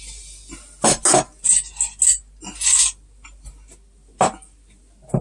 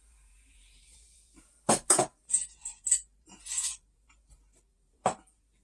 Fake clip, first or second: second